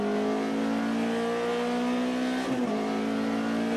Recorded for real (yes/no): yes